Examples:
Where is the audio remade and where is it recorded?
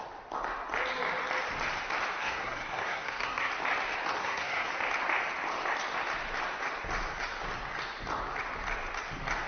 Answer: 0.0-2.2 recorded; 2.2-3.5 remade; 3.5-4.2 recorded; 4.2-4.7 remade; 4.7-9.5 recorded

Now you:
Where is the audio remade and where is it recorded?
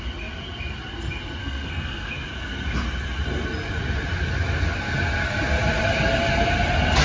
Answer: 0.0-1.4 recorded; 1.4-2.1 remade; 2.1-7.0 recorded